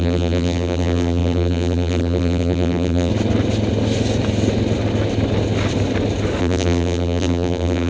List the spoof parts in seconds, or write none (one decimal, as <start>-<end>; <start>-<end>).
0.0-3.1; 6.4-7.9